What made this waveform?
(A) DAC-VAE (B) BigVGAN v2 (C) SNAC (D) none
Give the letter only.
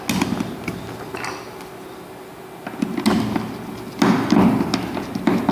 D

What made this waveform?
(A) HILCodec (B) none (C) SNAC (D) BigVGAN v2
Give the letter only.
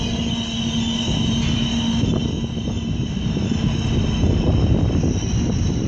B